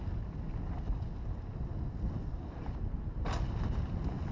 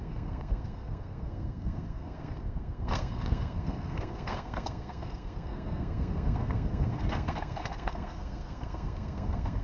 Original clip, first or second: first